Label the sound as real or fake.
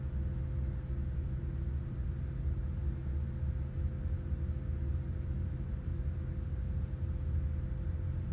real